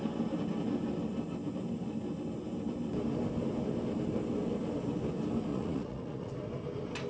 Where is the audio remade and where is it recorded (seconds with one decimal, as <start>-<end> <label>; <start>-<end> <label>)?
0.0-5.5 recorded; 5.5-6.3 remade; 6.3-7.1 recorded

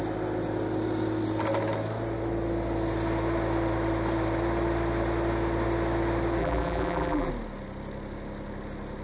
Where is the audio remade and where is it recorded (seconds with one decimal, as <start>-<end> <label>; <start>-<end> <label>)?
0.0-6.4 recorded; 6.4-7.3 remade; 7.3-9.0 recorded